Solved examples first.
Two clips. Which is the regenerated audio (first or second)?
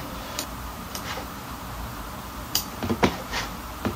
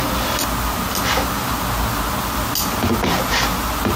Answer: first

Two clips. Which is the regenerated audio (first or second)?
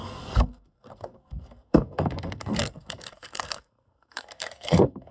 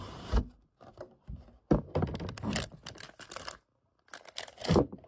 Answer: first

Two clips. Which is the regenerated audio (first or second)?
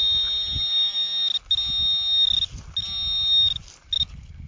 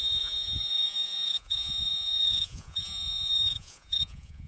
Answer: second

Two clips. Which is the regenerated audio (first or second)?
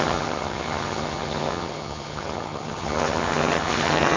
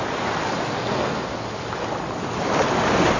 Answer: first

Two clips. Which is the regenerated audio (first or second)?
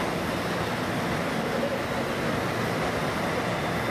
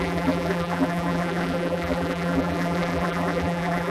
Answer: second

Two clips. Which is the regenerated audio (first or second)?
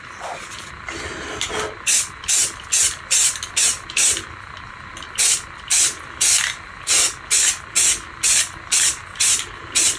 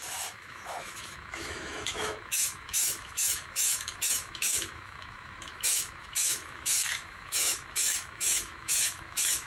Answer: second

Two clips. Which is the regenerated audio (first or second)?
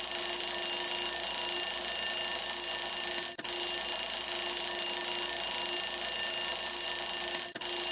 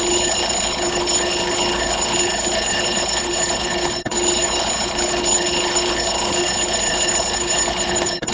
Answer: second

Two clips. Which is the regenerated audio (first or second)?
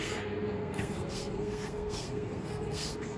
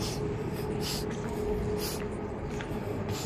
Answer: first